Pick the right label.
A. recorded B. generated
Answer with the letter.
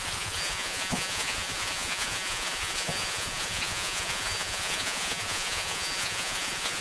B